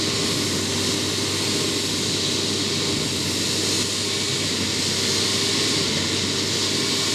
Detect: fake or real real